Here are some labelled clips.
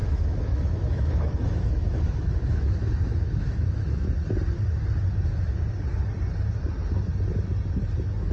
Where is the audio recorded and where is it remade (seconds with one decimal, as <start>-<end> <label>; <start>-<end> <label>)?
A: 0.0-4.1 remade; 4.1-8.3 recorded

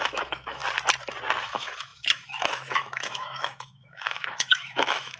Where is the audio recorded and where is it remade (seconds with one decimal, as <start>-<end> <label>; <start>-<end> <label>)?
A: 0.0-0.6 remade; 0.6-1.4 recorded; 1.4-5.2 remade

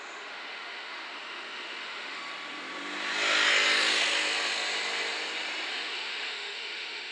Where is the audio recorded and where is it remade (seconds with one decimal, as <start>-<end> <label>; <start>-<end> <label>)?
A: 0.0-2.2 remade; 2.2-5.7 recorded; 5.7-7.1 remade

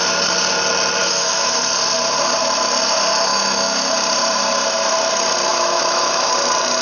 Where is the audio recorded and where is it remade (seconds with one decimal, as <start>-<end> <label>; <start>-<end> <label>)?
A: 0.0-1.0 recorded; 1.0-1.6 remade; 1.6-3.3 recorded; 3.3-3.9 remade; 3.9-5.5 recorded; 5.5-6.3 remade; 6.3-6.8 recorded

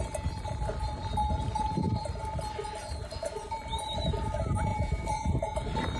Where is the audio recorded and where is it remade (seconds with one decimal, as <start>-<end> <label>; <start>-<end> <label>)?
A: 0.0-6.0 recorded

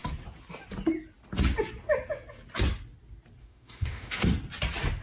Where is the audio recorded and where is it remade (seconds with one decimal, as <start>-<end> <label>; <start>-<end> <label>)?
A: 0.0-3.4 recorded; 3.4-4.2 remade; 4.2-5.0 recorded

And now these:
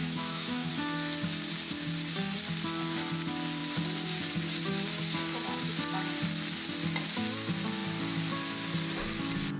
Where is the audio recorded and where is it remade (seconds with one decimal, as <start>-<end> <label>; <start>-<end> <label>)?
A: 0.0-0.7 remade; 0.7-9.6 recorded

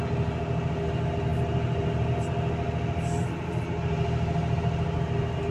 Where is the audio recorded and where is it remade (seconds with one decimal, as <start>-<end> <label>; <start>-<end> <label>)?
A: 0.0-5.5 recorded